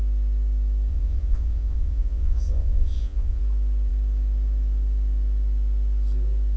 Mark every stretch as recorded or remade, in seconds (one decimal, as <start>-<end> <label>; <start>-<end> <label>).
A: 0.0-0.9 recorded; 0.9-3.4 remade; 3.4-6.6 recorded